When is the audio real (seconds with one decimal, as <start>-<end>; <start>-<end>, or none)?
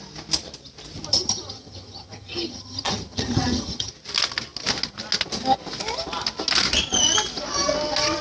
0.0-1.1; 3.9-8.2